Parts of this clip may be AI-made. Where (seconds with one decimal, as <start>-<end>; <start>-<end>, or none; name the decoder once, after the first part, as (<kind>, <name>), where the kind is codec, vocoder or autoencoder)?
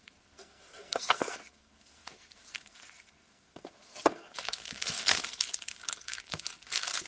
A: 0.0-7.1 (codec, SNAC)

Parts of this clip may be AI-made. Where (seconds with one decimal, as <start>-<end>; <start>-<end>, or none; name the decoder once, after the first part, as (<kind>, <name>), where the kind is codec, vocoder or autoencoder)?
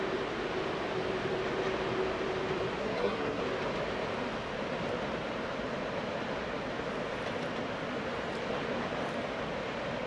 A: 2.8-3.4 (codec, SNAC)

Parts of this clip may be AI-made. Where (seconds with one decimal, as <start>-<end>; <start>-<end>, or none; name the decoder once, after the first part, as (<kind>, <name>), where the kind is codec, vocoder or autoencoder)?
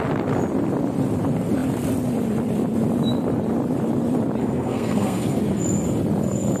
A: 4.4-5.4 (codec, SNAC)